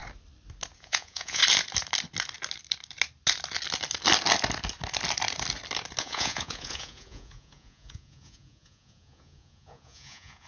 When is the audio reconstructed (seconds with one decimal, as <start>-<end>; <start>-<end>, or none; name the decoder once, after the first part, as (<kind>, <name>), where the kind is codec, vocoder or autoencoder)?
0.8-1.4 (vocoder, Vocos); 6.0-10.5